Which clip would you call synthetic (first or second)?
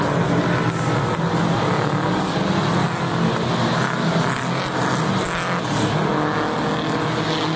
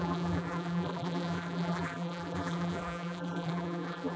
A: second